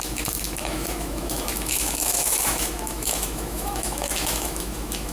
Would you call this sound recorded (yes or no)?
no